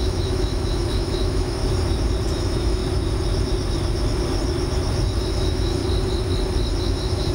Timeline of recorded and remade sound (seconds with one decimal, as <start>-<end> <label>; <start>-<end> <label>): 0.0-1.6 remade; 1.6-2.3 recorded; 2.3-2.8 remade; 2.8-5.2 recorded; 5.2-5.8 remade; 5.8-6.8 recorded; 6.8-7.3 remade